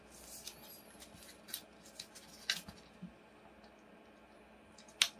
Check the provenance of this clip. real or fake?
real